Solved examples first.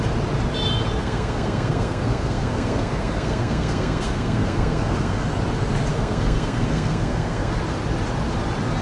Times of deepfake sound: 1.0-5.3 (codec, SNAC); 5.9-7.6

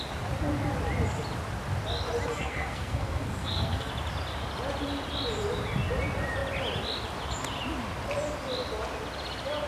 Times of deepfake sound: 2.3-3.9 (codec, SNAC)

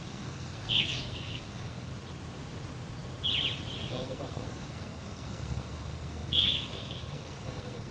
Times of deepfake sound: 0.0-1.9 (codec, SNAC); 3.8-7.9

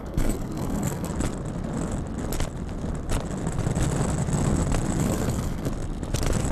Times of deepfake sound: 0.0-1.1 (codec, SNAC); 5.0-5.7

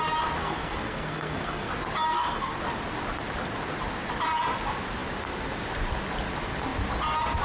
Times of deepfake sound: 0.4-1.7 (codec, SNAC); 2.1-2.6

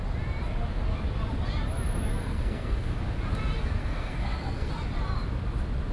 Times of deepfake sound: 2.2-3.0 (codec, SNAC); 3.8-4.7

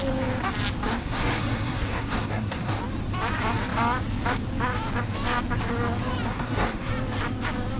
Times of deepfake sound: 0.9-2.8 (codec, SNAC); 6.3-6.9

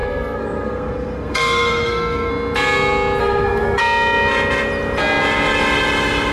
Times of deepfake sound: 0.0-2.3 (codec, SNAC); 3.2-3.8